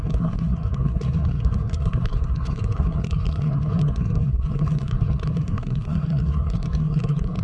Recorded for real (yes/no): no